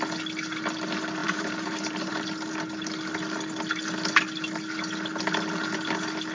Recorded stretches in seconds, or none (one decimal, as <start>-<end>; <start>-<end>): 0.0-1.2; 2.1-6.3